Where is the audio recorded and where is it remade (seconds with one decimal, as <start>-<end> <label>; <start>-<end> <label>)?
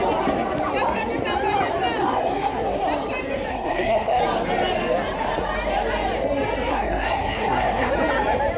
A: 0.0-2.0 recorded; 2.0-2.8 remade; 2.8-3.5 recorded; 3.5-4.2 remade; 4.2-6.7 recorded; 6.7-7.9 remade; 7.9-8.6 recorded